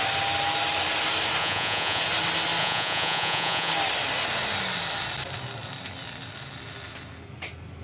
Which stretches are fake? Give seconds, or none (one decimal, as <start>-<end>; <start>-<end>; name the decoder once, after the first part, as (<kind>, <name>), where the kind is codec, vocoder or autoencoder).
1.4-2.0 (vocoder, Vocos); 2.6-3.7